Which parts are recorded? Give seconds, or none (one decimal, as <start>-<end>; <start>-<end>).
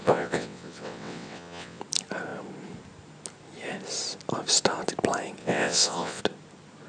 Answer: 1.8-5.4; 6.2-6.9